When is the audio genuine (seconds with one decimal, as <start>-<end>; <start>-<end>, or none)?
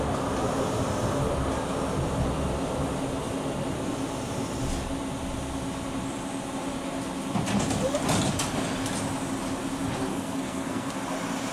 0.0-10.1; 10.9-11.5